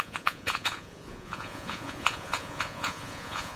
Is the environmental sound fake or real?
fake